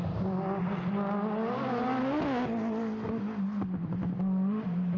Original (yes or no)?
yes